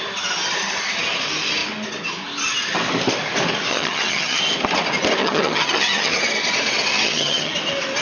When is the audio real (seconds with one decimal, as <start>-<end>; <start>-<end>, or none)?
0.0-3.7; 4.4-5.2; 6.2-6.9; 7.5-8.0